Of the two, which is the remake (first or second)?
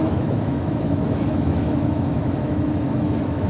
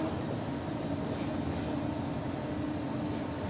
first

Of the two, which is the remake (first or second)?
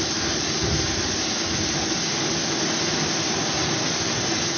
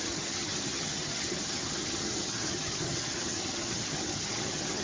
second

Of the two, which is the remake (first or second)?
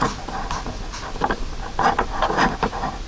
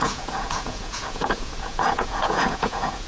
second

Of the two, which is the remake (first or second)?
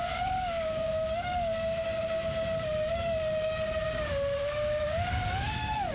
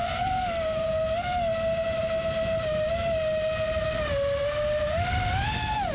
first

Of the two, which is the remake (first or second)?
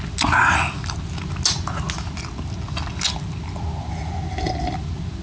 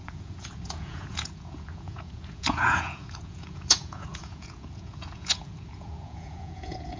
second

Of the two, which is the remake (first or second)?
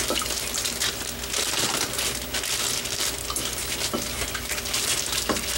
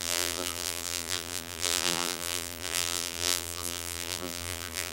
second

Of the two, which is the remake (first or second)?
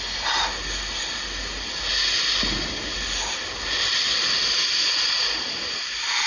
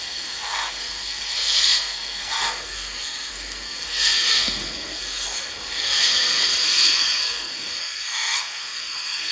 second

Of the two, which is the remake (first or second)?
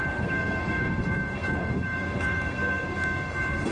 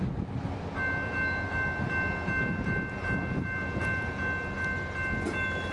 first